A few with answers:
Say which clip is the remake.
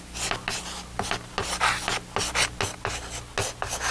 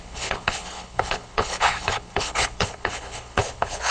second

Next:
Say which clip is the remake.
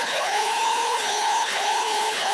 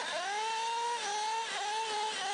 first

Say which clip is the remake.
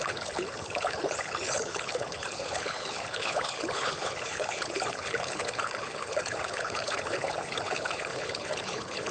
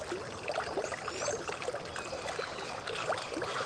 first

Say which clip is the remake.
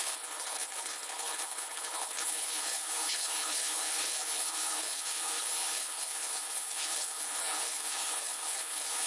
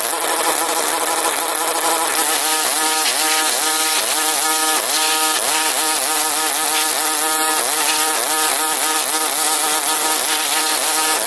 first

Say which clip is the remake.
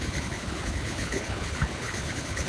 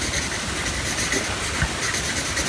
first